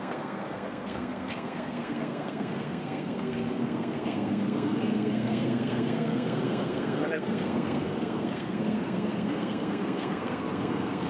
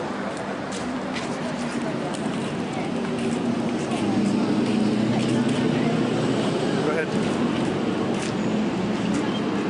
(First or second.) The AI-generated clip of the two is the first